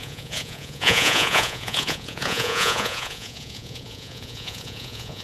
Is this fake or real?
fake